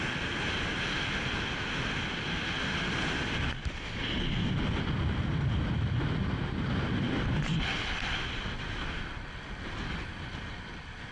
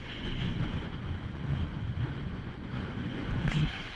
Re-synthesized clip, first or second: second